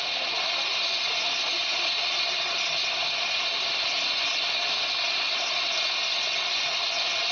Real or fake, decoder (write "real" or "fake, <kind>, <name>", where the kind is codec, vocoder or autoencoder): real